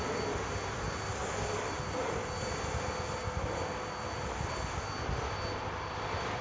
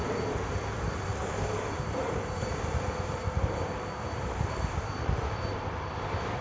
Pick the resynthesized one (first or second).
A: second